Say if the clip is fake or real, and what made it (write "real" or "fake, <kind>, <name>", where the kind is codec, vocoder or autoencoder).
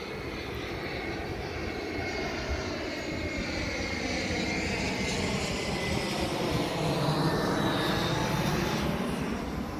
real